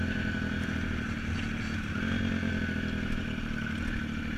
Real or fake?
real